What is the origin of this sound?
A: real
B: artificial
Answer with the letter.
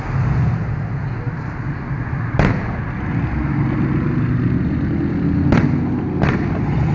A